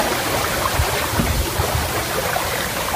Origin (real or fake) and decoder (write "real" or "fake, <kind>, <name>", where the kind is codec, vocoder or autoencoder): real